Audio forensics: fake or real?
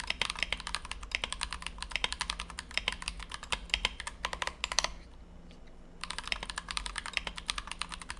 real